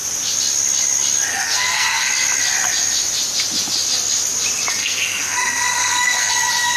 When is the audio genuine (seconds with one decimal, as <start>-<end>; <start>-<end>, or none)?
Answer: 0.0-1.3; 2.1-4.8; 6.3-6.8